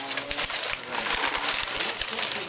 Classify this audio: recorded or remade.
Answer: recorded